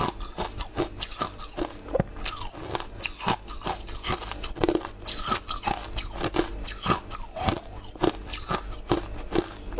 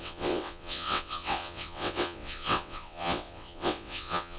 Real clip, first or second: first